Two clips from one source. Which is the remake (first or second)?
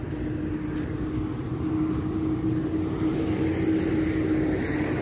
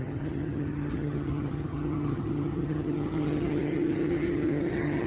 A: second